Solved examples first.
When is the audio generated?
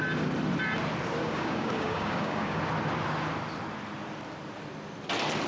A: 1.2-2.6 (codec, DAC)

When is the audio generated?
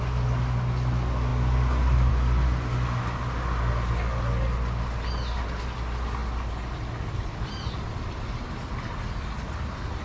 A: none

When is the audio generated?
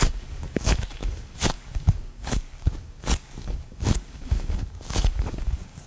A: 0.0-5.9 (codec, DAC)